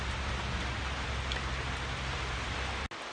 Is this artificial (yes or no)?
no